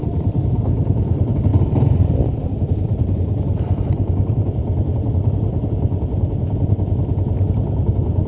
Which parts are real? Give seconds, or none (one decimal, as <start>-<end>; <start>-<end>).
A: 0.0-8.3